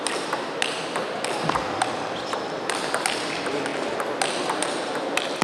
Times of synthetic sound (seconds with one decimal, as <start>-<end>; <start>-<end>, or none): none